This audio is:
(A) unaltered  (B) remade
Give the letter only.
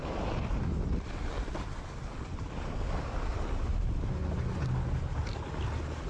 A